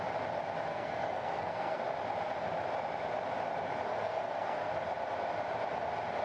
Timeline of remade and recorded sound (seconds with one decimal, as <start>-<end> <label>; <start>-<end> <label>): 0.0-0.7 recorded; 0.7-1.8 remade; 1.8-3.9 recorded; 3.9-4.7 remade; 4.7-6.2 recorded